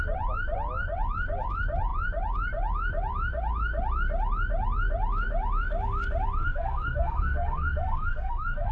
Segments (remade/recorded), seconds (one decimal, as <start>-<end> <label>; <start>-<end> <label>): 0.0-6.4 recorded; 6.4-8.7 remade